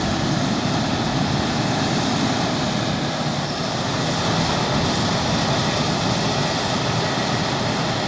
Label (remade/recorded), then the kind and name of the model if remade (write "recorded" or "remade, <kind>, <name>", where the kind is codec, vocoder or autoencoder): recorded